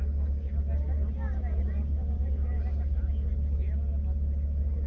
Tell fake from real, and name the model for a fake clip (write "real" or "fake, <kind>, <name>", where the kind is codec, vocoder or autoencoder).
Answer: real